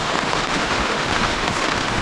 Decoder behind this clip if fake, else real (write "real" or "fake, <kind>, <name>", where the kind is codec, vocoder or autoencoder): fake, autoencoder, DAC-VAE